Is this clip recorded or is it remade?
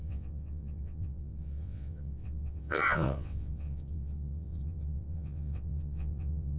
remade